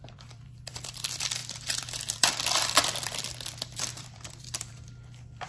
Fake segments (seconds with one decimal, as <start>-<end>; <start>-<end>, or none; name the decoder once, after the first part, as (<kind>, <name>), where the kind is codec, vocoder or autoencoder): 0.0-5.5 (vocoder, BigVGAN v2)